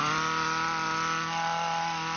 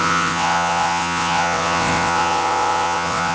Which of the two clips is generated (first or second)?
second